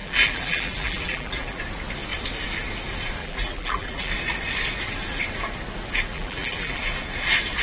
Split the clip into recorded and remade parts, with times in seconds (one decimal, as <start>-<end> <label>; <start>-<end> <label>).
0.0-1.6 remade; 1.6-3.2 recorded; 3.2-4.1 remade; 4.1-6.1 recorded; 6.1-6.8 remade; 6.8-7.6 recorded